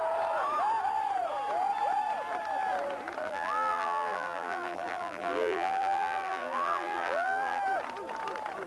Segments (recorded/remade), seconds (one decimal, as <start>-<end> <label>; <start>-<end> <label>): 0.0-3.2 recorded; 3.2-7.6 remade; 7.6-8.7 recorded